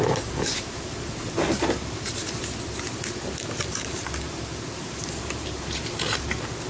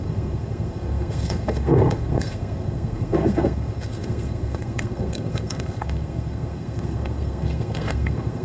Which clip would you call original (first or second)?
first